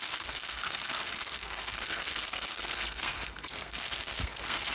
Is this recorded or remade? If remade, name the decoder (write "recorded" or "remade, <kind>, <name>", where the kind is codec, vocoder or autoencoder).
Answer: remade, codec, SNAC